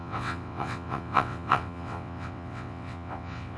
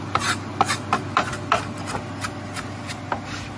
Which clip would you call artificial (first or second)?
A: first